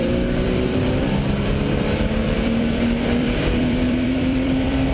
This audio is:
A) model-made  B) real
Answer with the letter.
A